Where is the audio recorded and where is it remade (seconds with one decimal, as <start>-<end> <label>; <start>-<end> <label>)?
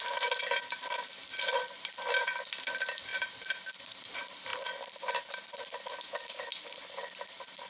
0.0-7.7 remade